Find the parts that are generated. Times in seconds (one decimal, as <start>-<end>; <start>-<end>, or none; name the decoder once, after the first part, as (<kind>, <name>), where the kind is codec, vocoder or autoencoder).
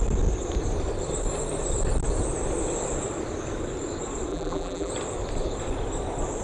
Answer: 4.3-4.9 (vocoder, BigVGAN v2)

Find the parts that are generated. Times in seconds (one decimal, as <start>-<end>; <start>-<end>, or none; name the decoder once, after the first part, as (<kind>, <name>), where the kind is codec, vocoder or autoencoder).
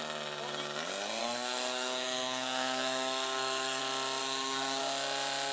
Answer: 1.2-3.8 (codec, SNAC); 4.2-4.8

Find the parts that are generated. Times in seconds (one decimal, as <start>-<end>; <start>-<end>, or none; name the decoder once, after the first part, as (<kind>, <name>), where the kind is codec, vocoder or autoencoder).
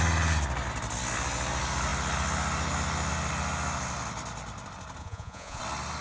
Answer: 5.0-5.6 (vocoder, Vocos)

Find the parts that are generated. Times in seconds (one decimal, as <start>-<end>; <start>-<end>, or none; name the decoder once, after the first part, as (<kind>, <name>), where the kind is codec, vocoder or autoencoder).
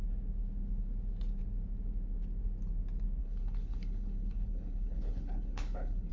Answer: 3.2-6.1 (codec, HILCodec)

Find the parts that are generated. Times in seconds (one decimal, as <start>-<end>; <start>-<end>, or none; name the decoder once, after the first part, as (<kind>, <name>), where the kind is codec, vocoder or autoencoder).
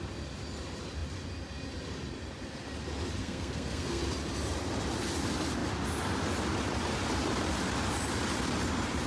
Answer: 3.2-4.0 (codec, SNAC)